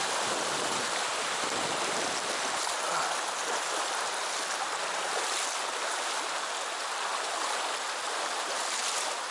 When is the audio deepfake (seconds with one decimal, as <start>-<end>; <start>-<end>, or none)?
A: none